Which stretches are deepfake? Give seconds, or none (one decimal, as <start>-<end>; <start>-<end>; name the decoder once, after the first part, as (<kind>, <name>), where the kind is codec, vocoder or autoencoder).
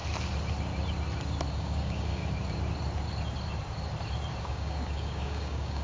1.5-2.2 (codec, DAC); 4.4-5.8